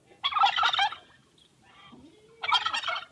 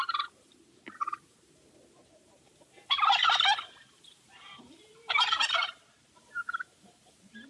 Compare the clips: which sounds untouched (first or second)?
first